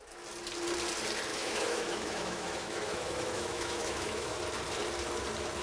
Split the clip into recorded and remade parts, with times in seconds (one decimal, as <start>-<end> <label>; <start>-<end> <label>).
0.0-1.3 recorded; 1.3-4.4 remade; 4.4-5.6 recorded